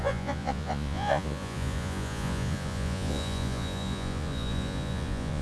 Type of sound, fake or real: fake